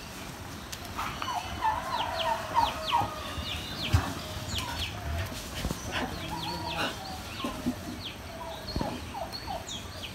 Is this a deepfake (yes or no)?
no